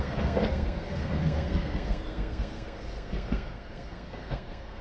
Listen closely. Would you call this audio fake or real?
fake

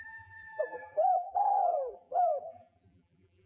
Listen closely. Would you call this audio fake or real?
fake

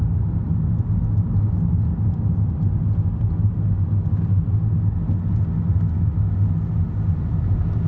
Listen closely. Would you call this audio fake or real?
real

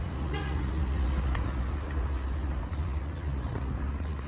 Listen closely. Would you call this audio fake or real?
fake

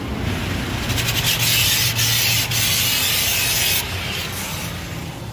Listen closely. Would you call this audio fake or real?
real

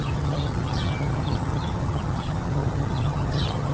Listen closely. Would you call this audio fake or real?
fake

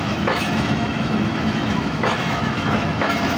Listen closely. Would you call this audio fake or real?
fake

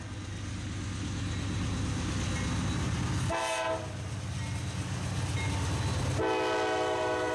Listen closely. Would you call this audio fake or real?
real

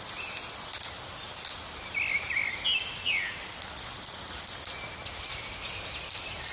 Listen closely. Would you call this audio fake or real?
real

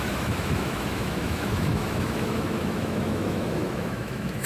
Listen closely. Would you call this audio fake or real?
fake